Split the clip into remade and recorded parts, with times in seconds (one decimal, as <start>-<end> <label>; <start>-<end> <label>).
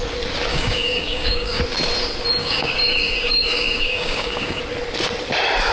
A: 0.0-0.5 recorded; 0.5-1.6 remade; 1.6-2.4 recorded; 2.4-4.6 remade; 4.6-5.7 recorded